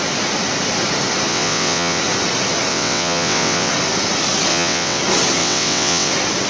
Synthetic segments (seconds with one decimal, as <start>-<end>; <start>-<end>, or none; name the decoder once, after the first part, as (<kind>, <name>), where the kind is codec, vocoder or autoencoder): 1.3-2.0 (vocoder, WaveNeXt); 2.7-3.7; 4.5-5.0; 5.4-6.1